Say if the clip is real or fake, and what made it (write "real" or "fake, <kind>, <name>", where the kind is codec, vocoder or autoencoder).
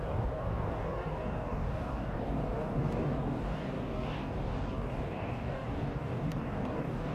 fake, codec, DAC